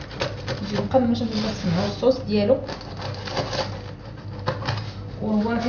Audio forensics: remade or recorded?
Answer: recorded